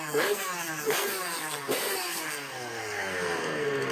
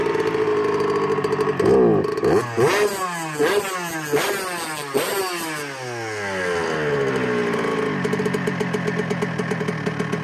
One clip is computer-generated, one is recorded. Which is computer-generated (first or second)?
first